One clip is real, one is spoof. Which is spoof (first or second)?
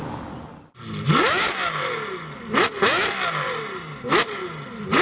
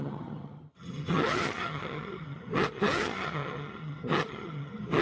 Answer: second